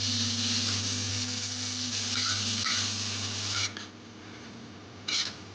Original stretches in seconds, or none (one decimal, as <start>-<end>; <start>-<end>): 0.0-1.1; 1.9-5.5